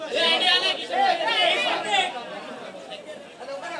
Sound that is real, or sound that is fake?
real